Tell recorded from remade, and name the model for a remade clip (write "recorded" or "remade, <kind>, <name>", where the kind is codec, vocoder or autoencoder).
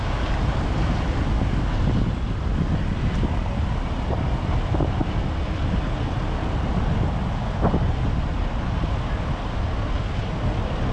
recorded